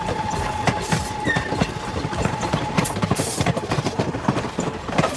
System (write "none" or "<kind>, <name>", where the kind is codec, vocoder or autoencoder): vocoder, BigVGAN v2